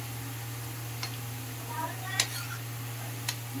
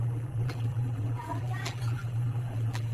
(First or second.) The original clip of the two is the first